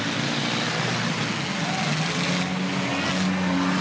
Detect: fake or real real